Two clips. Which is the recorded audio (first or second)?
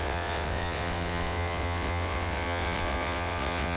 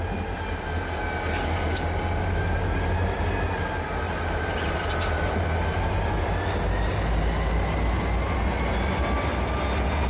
second